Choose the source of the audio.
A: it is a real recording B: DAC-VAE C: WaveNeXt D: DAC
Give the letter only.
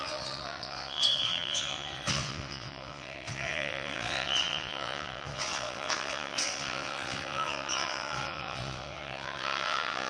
C